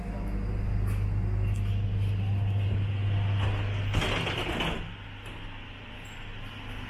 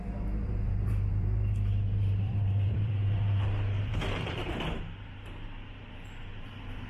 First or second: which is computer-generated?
second